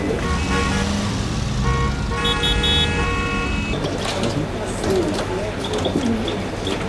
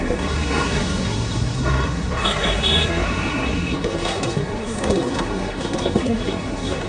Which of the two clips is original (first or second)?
first